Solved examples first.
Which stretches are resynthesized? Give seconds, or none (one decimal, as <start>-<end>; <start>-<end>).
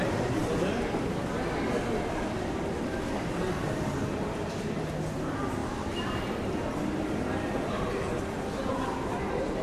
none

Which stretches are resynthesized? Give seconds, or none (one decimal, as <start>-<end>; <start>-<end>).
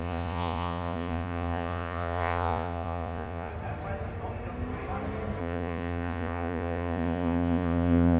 0.0-3.5; 5.4-8.2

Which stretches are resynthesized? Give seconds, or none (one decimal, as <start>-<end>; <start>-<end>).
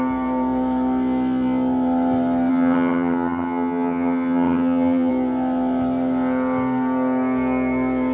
2.5-5.1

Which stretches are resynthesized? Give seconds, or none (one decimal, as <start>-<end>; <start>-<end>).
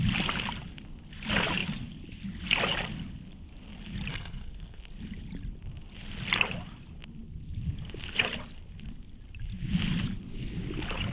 4.1-4.8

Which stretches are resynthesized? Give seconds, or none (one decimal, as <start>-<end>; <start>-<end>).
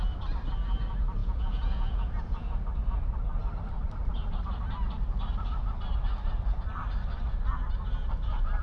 1.2-2.6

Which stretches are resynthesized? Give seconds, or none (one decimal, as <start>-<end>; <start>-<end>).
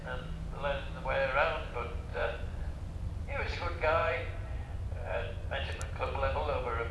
2.1-3.2; 4.0-5.5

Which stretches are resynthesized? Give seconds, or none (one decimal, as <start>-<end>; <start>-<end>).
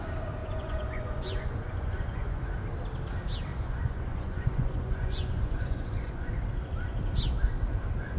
0.4-2.4; 3.5-6.3